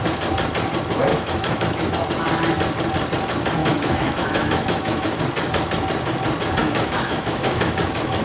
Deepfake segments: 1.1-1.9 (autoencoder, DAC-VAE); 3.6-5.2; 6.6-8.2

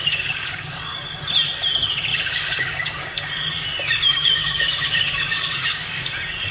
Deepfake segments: 0.0-0.8 (codec, DAC); 2.1-3.1; 4.1-6.1

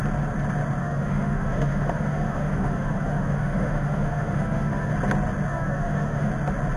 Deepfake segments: 0.8-4.9 (autoencoder, DAC-VAE); 5.5-6.3

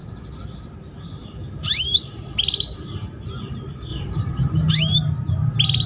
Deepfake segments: 0.0-3.5 (vocoder, BigVGAN v2); 3.9-4.7

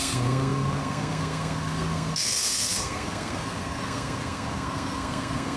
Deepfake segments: 0.0-5.6 (codec, SNAC)

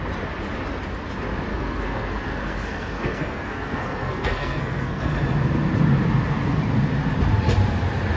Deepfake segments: 1.5-5.1 (codec, SNAC)

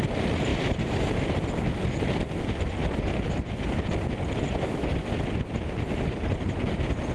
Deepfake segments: none

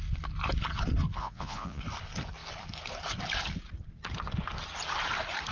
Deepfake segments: 1.2-1.8 (vocoder, Vocos)